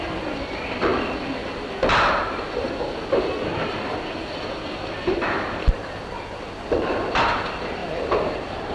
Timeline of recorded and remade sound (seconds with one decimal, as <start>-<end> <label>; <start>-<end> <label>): 0.0-8.7 recorded